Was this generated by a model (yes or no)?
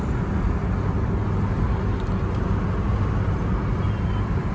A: no